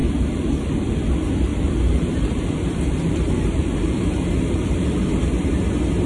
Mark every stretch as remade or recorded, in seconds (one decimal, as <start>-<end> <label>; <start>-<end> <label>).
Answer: 0.0-1.0 remade; 1.0-1.5 recorded; 1.5-5.2 remade; 5.2-6.1 recorded

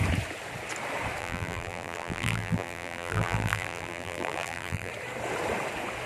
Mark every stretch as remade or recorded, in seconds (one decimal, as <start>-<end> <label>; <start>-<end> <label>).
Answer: 0.0-1.2 recorded; 1.2-4.9 remade; 4.9-6.1 recorded

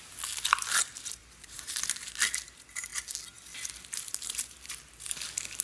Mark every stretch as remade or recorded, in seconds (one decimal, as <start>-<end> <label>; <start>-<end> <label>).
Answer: 0.0-1.2 recorded; 1.2-1.8 remade; 1.8-5.6 recorded

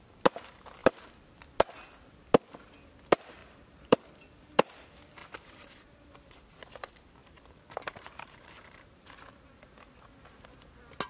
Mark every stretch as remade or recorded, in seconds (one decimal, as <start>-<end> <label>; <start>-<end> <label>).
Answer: 0.0-3.4 recorded; 3.4-4.0 remade; 4.0-5.2 recorded; 5.2-6.1 remade; 6.1-7.2 recorded; 7.2-9.2 remade; 9.2-11.1 recorded

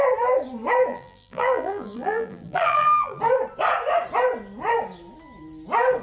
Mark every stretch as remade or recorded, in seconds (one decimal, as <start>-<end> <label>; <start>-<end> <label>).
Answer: 0.0-0.9 recorded; 0.9-3.2 remade; 3.2-6.0 recorded